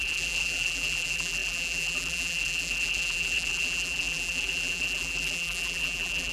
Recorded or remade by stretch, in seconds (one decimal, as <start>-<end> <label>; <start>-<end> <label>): 0.0-6.3 remade